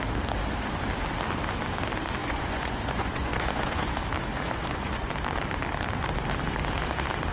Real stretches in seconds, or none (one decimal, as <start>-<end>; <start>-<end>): 0.0-2.2; 3.9-4.3; 5.1-7.3